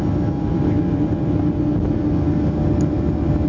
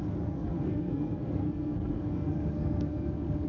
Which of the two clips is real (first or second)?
first